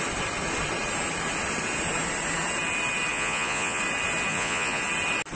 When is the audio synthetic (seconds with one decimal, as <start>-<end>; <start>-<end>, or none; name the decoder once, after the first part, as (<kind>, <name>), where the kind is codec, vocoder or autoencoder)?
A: 3.1-3.8 (vocoder, Vocos); 4.3-4.8